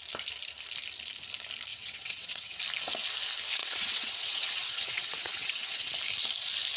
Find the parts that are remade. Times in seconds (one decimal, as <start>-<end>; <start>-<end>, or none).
1.7-2.6; 3.6-5.9